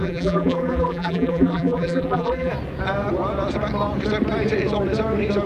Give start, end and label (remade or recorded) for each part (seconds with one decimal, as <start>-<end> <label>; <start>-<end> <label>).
0.0-2.5 remade; 2.5-5.5 recorded